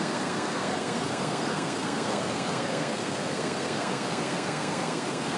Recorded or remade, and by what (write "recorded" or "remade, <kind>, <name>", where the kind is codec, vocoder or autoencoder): remade, codec, SNAC